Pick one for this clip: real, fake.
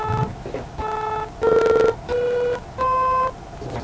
real